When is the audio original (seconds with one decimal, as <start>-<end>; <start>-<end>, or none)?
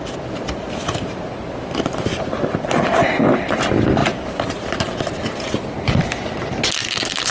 0.0-1.4; 2.3-7.3